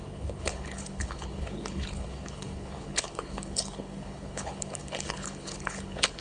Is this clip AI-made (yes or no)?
yes